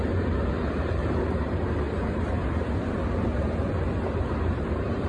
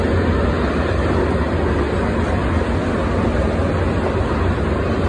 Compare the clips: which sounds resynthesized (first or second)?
first